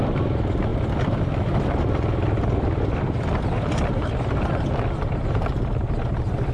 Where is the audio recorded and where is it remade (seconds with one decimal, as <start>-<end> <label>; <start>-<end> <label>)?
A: 0.0-0.7 recorded; 0.7-3.3 remade; 3.3-6.5 recorded